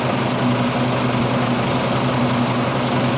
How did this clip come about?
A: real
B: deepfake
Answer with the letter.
A